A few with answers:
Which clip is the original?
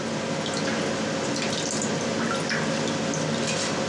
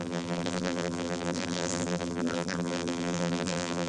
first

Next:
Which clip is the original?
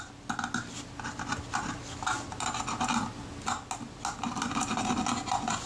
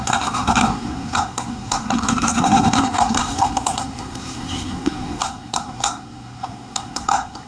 first